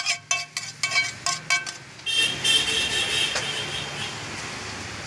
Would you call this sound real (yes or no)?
yes